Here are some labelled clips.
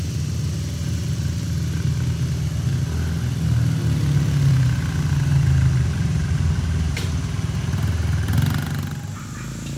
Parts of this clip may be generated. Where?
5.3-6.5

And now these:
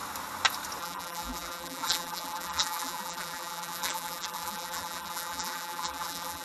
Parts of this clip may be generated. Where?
0.8-6.4

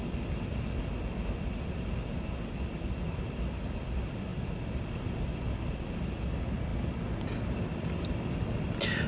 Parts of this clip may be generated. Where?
none

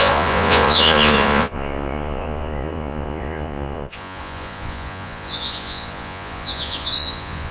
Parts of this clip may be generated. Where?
0.0-7.5

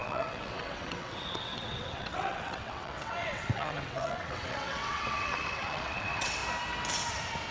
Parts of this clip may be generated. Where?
0.0-6.4

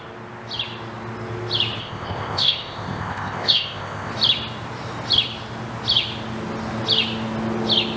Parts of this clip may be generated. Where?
1.8-4.1